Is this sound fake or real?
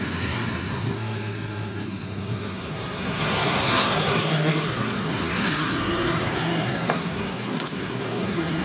fake